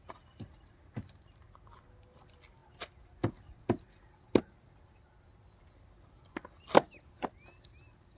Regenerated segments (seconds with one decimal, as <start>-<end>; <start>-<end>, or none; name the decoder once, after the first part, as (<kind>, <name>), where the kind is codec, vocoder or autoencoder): none